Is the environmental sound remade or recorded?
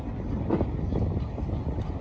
recorded